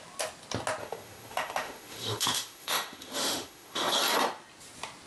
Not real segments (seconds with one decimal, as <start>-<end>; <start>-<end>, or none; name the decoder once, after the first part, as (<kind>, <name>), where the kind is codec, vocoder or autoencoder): 0.8-3.9 (autoencoder, DAC-VAE)